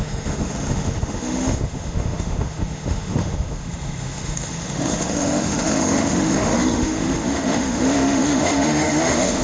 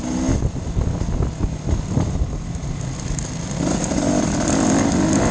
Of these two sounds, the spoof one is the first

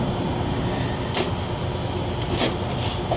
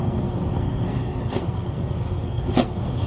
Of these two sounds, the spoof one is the second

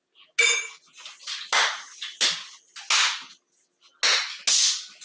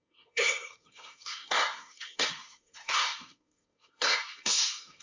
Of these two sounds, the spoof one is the second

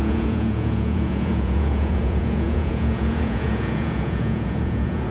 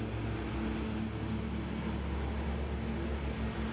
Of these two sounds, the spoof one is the first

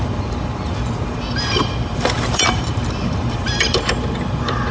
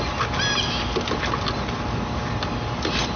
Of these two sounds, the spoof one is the first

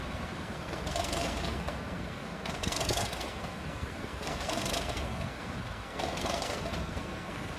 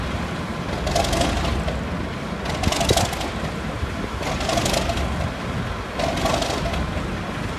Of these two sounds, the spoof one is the first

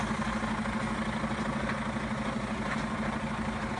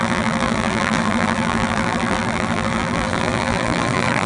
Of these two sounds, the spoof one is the second